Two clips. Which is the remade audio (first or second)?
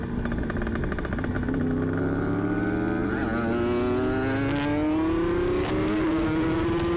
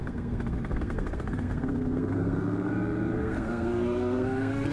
second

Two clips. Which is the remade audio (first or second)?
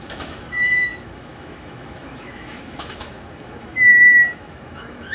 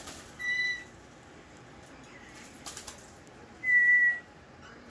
first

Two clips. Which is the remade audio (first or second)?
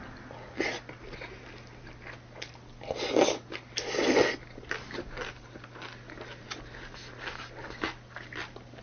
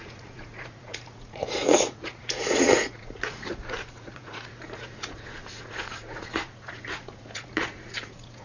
second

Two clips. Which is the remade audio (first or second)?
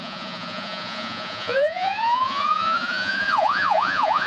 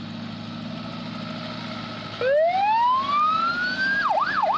first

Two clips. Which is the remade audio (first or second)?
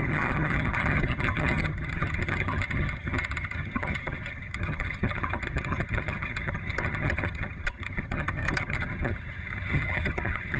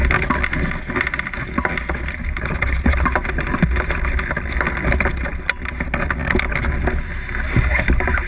first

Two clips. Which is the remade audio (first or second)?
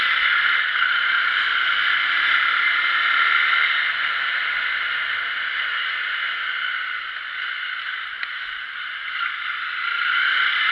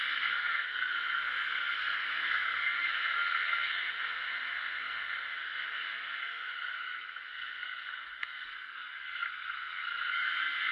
second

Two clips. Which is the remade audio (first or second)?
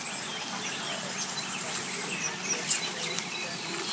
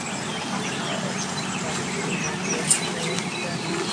first